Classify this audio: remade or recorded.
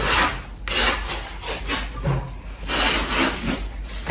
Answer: recorded